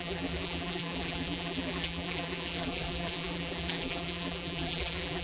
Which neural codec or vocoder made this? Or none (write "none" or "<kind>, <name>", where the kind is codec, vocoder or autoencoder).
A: vocoder, BigVGAN v2